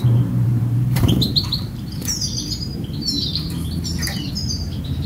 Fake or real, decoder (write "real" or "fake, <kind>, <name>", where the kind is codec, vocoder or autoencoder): fake, vocoder, BigVGAN v2